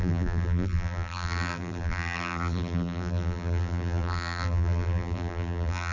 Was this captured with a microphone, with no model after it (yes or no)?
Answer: no